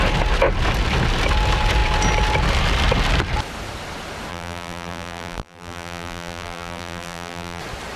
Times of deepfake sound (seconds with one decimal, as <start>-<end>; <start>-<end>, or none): 4.3-7.6